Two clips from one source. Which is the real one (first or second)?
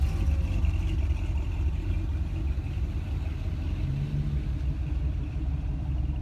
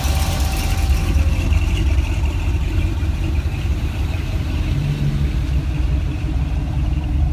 first